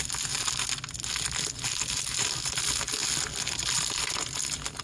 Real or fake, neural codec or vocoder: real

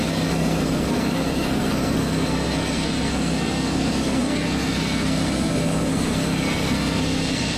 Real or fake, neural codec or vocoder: fake, codec, SNAC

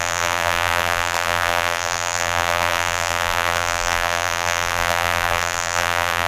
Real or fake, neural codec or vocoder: fake, vocoder, BigVGAN v2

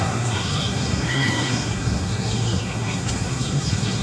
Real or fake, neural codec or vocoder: fake, codec, SNAC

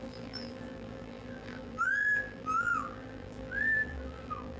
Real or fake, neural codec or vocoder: fake, vocoder, BigVGAN v2